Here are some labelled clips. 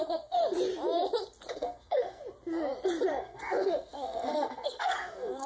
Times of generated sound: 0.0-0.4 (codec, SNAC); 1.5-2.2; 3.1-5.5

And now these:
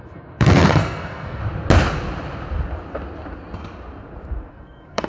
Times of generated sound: 0.0-1.4 (codec, SNAC); 4.5-5.1

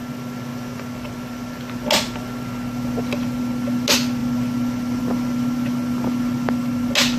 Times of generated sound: none

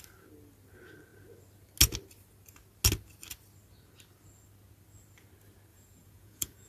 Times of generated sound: 5.7-6.7 (vocoder, Vocos)

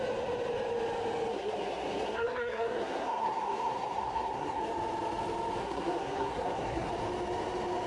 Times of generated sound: 1.3-4.6 (codec, SNAC); 5.6-6.9

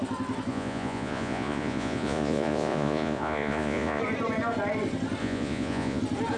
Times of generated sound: 0.5-4.0 (vocoder, Vocos); 5.2-6.0

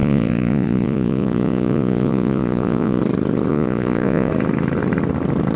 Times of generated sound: 0.0-3.0 (vocoder, Vocos); 3.5-4.3

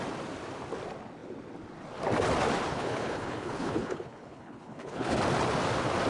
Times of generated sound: 2.7-5.2 (codec, HILCodec)